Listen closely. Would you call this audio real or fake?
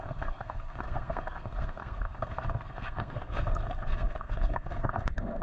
fake